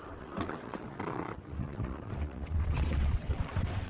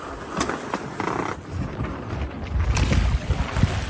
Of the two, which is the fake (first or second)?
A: first